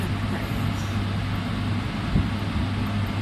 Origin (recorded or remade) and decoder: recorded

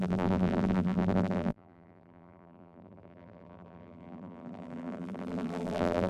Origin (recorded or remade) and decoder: remade, vocoder, BigVGAN v2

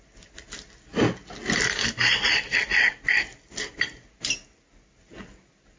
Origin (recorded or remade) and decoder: recorded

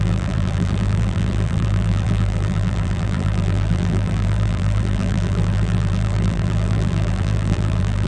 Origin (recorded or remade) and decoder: remade, vocoder, BigVGAN v2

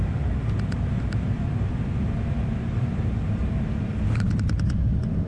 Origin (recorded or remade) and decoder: remade, vocoder, BigVGAN v2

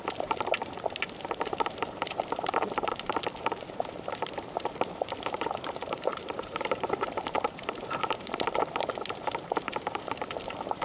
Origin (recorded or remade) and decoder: remade, vocoder, BigVGAN v2